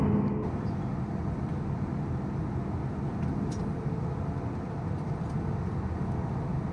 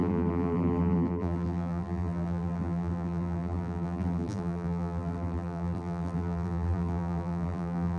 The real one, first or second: first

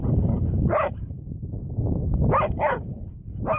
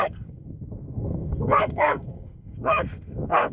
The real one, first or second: first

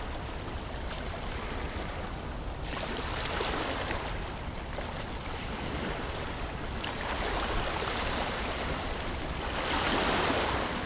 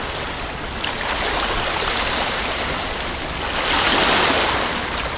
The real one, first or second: second